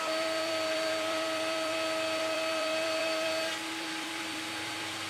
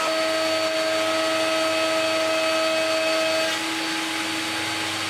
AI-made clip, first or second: first